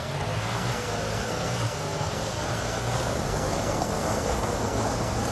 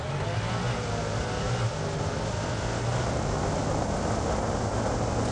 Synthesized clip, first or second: first